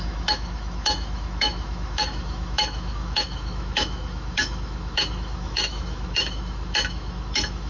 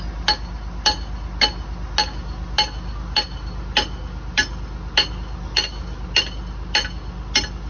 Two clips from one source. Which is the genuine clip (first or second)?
second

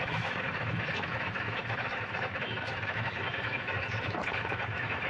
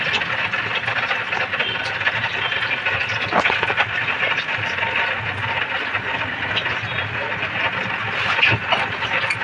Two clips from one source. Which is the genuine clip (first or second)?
second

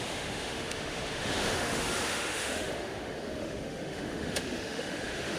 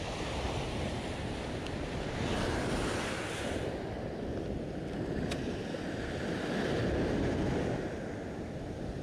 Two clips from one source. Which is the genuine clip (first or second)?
second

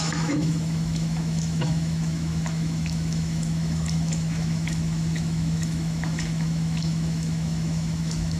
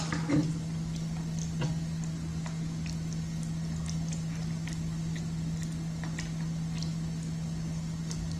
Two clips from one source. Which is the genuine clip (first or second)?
second